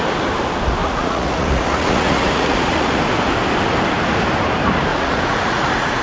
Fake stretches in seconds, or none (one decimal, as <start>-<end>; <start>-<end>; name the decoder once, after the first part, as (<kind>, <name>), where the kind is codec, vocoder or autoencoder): 0.8-3.0 (vocoder, Vocos); 4.9-6.0